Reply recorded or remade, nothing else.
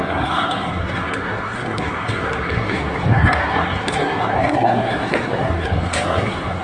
remade